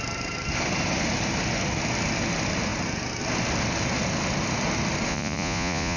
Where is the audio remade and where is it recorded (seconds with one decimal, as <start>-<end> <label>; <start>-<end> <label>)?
0.0-5.1 recorded; 5.1-6.0 remade